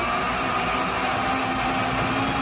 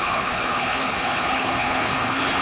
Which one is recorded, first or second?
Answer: first